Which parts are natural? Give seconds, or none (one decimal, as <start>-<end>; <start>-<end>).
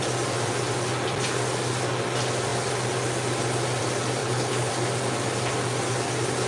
0.0-4.2; 4.7-6.5